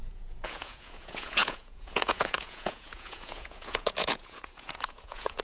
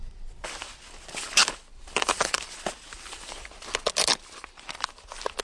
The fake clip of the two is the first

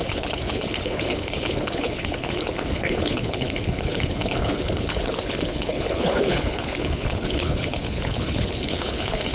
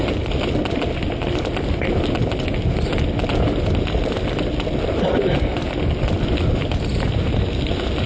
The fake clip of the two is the first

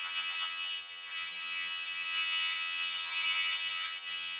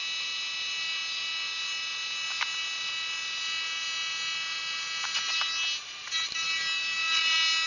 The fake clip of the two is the first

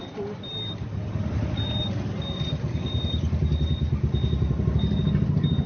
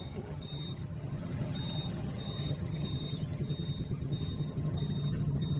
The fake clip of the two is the second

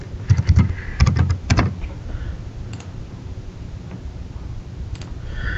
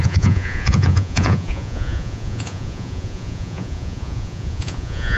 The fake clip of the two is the second